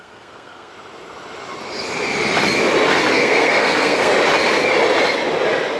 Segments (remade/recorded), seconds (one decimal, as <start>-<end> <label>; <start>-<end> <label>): 0.0-0.7 remade; 0.7-3.1 recorded; 3.1-4.1 remade; 4.1-5.8 recorded